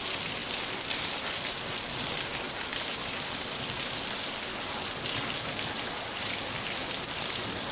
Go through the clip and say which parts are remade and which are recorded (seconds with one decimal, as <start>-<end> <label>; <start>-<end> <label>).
0.0-7.7 recorded